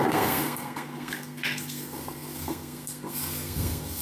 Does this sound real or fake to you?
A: fake